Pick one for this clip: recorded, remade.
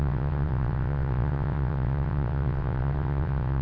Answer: remade